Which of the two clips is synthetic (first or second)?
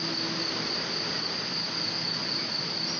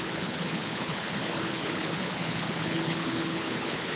second